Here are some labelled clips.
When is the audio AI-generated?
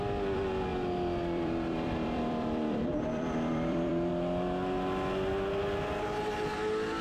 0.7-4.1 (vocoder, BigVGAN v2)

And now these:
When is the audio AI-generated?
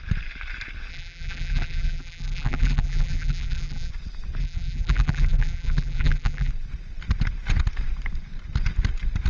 0.9-3.9 (vocoder, BigVGAN v2); 4.4-6.5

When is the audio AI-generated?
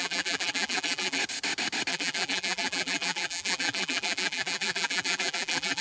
0.0-1.2 (vocoder, BigVGAN v2); 1.9-5.8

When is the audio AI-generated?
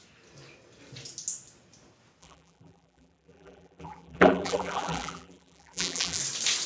2.2-6.2 (vocoder, BigVGAN v2)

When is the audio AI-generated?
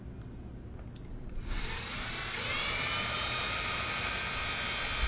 1.1-4.2 (vocoder, BigVGAN v2)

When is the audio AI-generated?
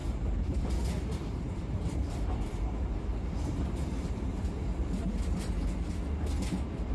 0.0-0.7 (vocoder, BigVGAN v2); 1.2-4.4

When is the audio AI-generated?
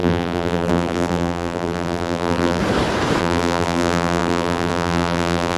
0.0-2.6 (vocoder, BigVGAN v2); 3.2-5.6